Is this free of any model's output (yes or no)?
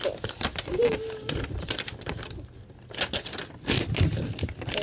yes